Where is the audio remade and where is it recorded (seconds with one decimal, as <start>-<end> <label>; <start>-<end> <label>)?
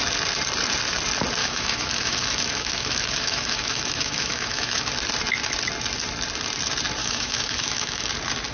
0.0-1.4 recorded; 1.4-4.9 remade; 4.9-7.0 recorded; 7.0-8.1 remade; 8.1-8.5 recorded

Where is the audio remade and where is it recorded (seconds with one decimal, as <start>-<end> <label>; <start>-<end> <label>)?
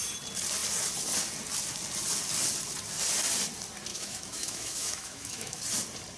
0.0-3.9 recorded; 3.9-5.6 remade; 5.6-6.2 recorded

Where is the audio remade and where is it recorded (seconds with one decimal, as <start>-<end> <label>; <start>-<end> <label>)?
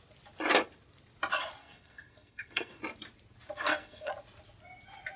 0.0-1.6 recorded; 1.6-2.8 remade; 2.8-3.6 recorded; 3.6-4.1 remade; 4.1-5.2 recorded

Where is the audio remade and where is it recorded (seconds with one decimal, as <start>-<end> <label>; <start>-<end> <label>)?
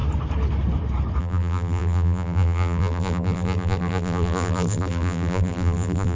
0.0-1.2 recorded; 1.2-6.2 remade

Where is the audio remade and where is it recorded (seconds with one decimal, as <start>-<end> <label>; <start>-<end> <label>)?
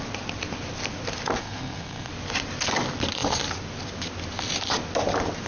0.0-1.4 recorded; 1.4-2.1 remade; 2.1-5.5 recorded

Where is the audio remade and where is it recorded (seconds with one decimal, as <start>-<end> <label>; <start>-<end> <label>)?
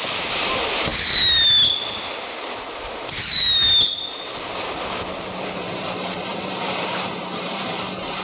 0.0-0.9 remade; 0.9-2.2 recorded; 2.2-3.6 remade; 3.6-4.5 recorded; 4.5-8.2 remade